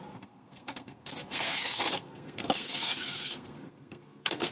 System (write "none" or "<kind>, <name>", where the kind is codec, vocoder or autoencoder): codec, SNAC